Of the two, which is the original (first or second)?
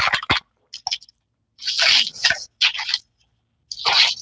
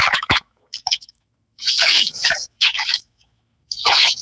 first